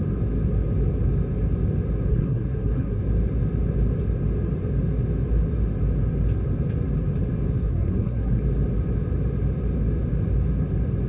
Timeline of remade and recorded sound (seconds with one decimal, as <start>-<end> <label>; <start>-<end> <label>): 0.0-2.1 recorded; 2.1-3.0 remade; 3.0-7.6 recorded; 7.6-8.4 remade; 8.4-11.1 recorded